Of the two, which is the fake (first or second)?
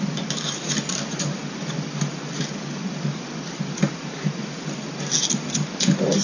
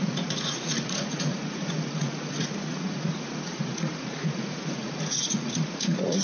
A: second